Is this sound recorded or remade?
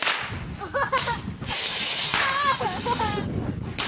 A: recorded